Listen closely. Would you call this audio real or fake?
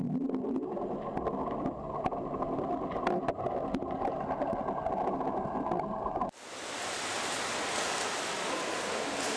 real